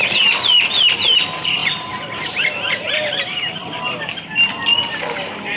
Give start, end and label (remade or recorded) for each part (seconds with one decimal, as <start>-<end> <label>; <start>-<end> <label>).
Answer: 0.0-1.6 recorded; 1.6-3.8 remade; 3.8-5.6 recorded

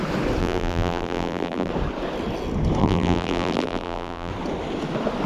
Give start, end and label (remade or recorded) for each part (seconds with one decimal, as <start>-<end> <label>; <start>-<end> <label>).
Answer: 0.0-0.4 recorded; 0.4-1.7 remade; 1.7-2.8 recorded; 2.8-4.3 remade; 4.3-5.3 recorded

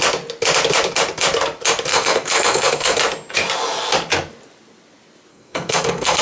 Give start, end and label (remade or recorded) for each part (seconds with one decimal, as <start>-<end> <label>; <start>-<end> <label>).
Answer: 0.0-1.9 recorded; 1.9-3.0 remade; 3.0-5.3 recorded; 5.3-6.2 remade

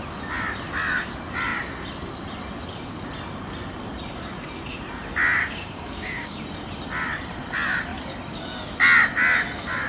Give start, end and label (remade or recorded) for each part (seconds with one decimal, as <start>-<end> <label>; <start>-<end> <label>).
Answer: 0.0-5.4 recorded; 5.4-6.4 remade; 6.4-9.9 recorded

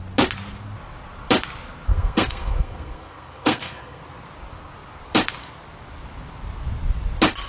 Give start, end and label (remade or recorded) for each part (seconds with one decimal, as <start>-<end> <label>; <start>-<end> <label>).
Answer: 0.0-1.9 recorded; 1.9-4.0 remade; 4.0-7.5 recorded

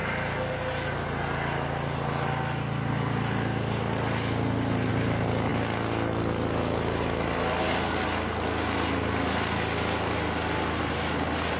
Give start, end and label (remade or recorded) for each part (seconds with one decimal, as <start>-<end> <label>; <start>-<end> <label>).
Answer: 0.0-11.6 recorded